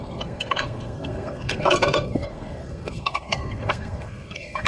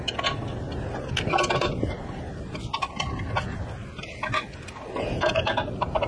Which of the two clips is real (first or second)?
second